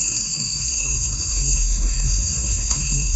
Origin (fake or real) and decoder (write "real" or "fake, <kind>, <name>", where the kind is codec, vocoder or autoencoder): fake, codec, SNAC